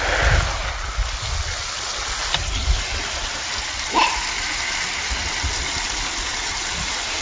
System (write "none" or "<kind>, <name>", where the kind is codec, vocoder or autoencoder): none